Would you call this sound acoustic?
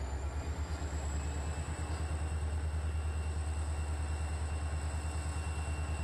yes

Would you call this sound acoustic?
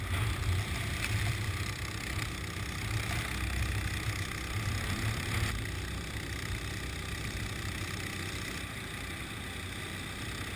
yes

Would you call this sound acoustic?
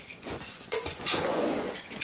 no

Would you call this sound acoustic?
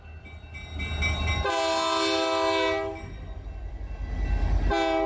yes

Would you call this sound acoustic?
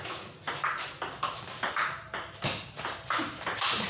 yes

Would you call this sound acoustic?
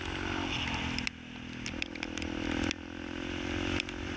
yes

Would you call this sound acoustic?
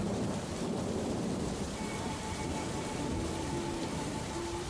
no